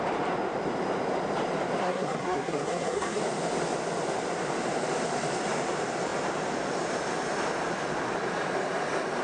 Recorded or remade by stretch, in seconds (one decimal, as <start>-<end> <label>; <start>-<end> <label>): 0.0-1.8 recorded; 1.8-3.2 remade; 3.2-9.2 recorded